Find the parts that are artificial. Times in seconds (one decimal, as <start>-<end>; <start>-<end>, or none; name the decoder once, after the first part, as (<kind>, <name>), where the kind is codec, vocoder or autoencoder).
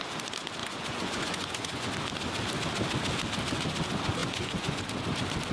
0.6-1.9 (vocoder, Vocos); 4.2-4.8